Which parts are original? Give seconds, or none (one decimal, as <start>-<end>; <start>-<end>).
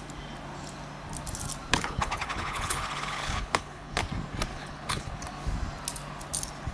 0.0-1.7; 4.0-4.5; 5.1-6.7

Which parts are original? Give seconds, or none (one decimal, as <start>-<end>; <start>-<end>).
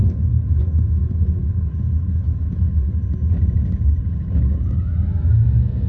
0.6-1.0; 3.0-4.0; 4.8-5.9